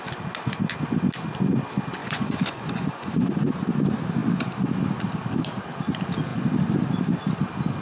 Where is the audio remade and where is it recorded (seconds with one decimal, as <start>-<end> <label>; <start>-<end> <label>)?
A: 0.0-2.0 recorded; 2.0-3.5 remade; 3.5-7.8 recorded